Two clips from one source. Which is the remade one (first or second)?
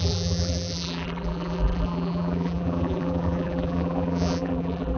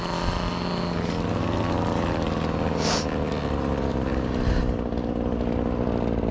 first